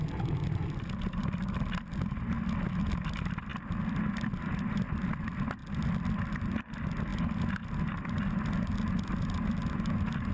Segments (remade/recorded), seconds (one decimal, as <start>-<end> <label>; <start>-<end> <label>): 0.0-10.3 recorded